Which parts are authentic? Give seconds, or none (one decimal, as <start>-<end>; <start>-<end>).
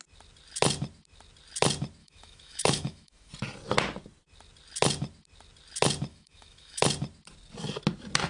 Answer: 0.0-2.0; 3.3-6.1; 6.8-8.3